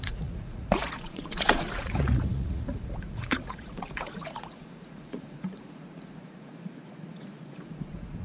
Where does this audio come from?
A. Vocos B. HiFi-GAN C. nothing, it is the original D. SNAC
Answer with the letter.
A